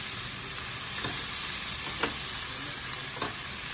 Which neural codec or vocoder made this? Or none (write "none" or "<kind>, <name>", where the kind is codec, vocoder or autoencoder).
none